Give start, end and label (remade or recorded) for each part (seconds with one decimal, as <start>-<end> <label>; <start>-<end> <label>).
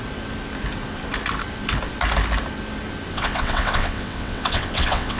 0.0-3.1 recorded; 3.1-5.2 remade